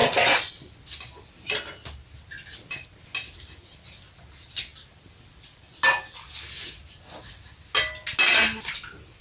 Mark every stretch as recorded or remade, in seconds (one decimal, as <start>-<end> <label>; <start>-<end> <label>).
0.0-0.5 remade; 0.5-9.2 recorded